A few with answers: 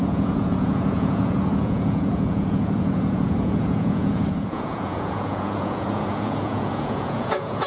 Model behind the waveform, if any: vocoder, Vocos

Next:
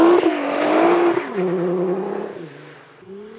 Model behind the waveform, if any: none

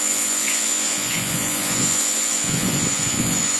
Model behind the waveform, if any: vocoder, Vocos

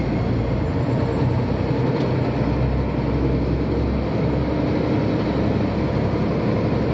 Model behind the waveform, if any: none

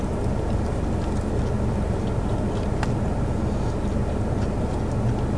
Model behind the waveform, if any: none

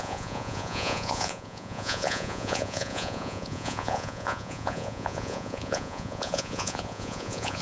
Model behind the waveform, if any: vocoder, Vocos